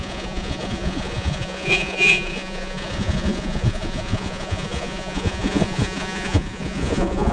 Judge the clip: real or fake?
fake